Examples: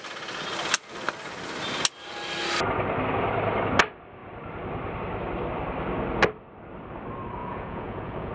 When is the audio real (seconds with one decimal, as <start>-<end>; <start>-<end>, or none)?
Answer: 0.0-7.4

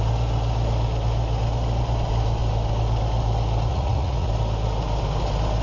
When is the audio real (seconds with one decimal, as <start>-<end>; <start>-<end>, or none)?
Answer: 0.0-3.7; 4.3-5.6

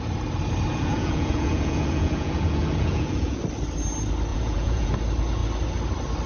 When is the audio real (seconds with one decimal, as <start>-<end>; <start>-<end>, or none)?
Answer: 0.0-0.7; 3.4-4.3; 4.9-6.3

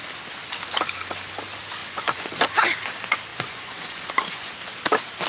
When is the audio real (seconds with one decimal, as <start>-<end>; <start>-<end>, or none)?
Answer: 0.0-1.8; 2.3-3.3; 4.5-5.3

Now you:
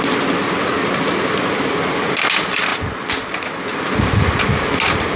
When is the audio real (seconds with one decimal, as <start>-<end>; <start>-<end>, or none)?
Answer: 0.0-5.2

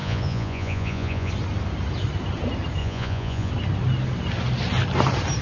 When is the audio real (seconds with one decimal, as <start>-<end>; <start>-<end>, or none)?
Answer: 1.3-2.8; 3.5-5.4

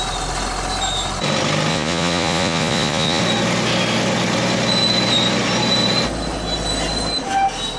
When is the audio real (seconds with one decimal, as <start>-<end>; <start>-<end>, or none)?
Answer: 0.0-1.7; 3.2-7.8